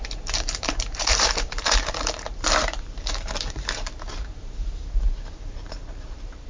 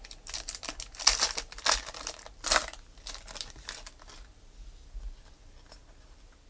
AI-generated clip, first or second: first